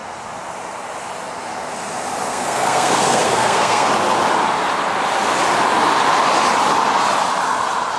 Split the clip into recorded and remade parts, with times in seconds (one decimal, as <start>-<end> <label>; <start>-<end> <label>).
0.0-2.3 recorded; 2.3-3.9 remade; 3.9-8.0 recorded